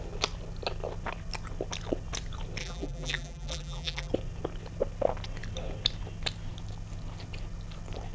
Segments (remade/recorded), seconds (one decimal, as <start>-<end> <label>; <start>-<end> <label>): 0.0-2.6 recorded; 2.6-4.1 remade; 4.1-8.1 recorded